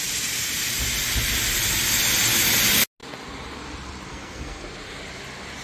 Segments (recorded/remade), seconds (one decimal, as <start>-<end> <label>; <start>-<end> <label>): 0.0-4.1 recorded; 4.1-4.6 remade; 4.6-5.6 recorded